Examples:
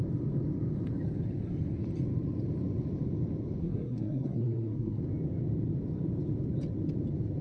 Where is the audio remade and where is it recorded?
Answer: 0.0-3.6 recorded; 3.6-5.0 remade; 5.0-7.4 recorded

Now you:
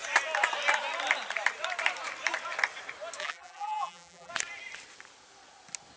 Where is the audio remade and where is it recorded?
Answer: 0.0-3.2 recorded; 3.2-4.3 remade; 4.3-6.0 recorded